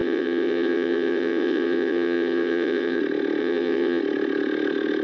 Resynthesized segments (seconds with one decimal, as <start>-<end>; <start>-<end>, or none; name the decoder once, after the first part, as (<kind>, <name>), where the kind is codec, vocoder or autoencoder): 0.0-3.0 (vocoder, WaveNeXt); 3.4-4.0